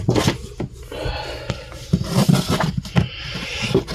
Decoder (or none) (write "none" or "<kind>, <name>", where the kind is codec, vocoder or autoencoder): none